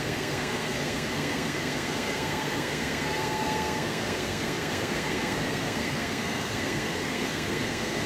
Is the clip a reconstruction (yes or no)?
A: yes